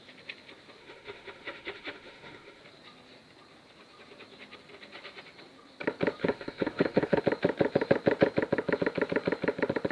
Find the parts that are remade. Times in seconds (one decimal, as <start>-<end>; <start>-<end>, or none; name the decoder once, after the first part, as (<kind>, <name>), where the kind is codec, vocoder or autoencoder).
0.8-2.6 (autoencoder, DAC-VAE); 6.2-7.2